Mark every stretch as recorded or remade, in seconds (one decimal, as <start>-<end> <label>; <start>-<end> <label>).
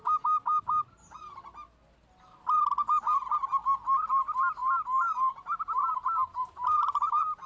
0.0-7.5 recorded